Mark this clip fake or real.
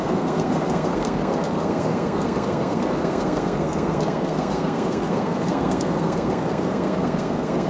fake